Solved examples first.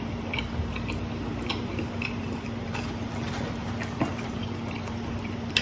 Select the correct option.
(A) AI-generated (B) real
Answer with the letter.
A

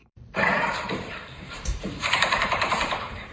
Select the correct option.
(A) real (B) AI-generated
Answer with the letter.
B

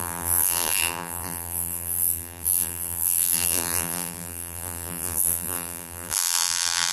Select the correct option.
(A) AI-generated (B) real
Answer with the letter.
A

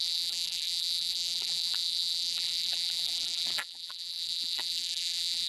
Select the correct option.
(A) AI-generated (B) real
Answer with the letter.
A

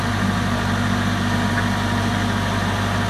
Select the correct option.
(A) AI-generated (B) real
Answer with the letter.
B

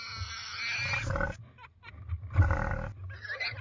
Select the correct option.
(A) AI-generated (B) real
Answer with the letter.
B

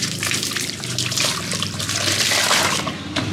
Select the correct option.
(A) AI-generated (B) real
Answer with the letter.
A